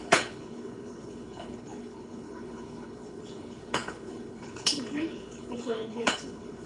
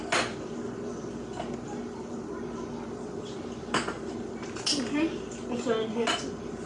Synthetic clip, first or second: first